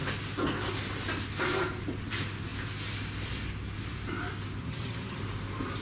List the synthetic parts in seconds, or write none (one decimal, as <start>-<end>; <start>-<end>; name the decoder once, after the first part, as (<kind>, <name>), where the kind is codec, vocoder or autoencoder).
4.6-5.2 (vocoder, HiFi-GAN)